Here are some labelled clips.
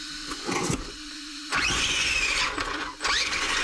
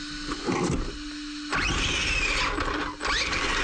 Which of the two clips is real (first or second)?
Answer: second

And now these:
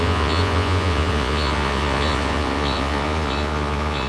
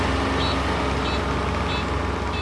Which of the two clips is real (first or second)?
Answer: second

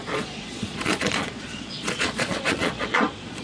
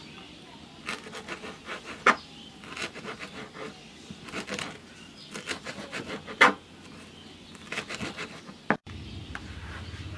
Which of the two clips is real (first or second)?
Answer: second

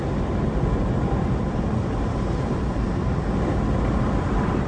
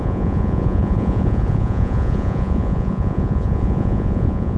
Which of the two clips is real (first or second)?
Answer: first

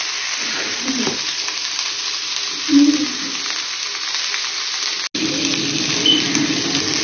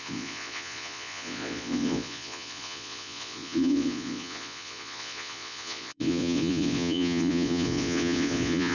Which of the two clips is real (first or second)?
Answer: first